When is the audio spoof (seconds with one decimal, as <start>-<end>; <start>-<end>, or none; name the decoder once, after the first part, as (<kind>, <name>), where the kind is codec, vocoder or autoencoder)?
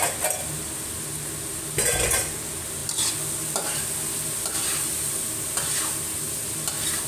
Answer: none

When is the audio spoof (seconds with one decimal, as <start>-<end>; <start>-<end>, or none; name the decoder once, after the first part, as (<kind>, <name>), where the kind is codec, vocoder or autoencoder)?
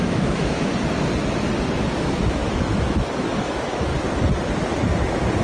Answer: 0.0-0.7 (autoencoder, DAC-VAE); 1.8-3.9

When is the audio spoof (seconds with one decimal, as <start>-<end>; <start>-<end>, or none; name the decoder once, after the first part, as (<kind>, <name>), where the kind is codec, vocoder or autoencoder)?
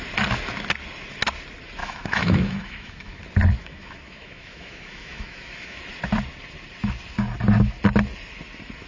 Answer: 1.8-3.2 (autoencoder, DAC-VAE); 3.6-5.8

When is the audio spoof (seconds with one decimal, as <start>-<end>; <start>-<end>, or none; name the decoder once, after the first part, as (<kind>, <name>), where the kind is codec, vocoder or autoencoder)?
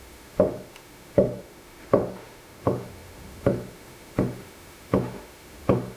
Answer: 0.0-6.0 (autoencoder, DAC-VAE)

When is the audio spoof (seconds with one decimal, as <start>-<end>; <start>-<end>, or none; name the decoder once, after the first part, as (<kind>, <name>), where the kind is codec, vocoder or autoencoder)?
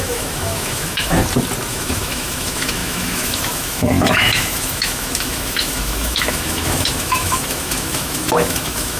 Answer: 0.0-1.2 (autoencoder, DAC-VAE); 1.7-9.0